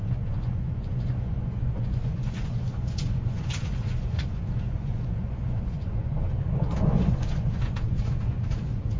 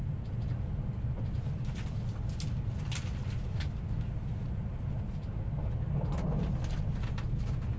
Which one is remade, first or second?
first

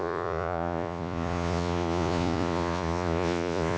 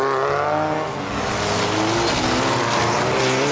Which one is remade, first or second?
first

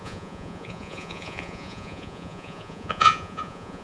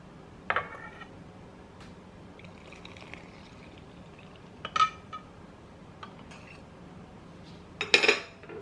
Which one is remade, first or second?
first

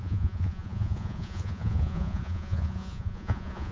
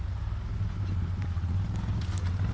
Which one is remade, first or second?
first